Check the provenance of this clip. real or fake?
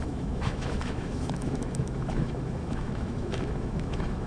fake